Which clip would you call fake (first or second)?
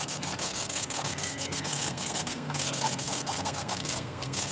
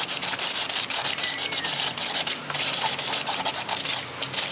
first